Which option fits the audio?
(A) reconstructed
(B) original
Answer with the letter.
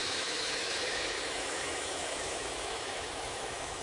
A